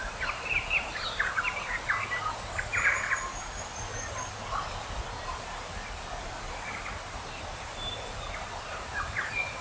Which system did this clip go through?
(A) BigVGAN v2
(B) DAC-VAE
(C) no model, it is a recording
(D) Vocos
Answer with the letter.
C